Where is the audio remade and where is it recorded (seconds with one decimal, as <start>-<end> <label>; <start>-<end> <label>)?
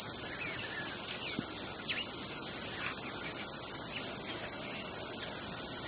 0.0-5.9 recorded